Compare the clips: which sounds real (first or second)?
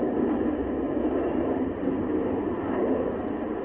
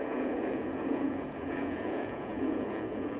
first